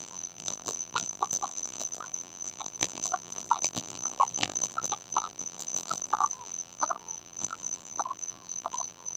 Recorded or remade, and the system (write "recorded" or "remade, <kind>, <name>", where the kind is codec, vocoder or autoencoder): remade, vocoder, BigVGAN v2